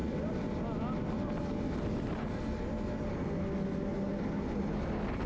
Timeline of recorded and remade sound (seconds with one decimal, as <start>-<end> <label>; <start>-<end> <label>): 0.0-5.3 recorded